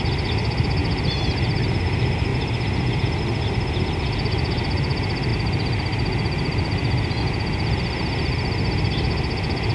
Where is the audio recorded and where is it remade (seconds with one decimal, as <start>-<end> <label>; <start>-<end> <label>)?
0.0-0.8 recorded; 0.8-1.8 remade; 1.8-2.3 recorded; 2.3-3.2 remade; 3.2-9.7 recorded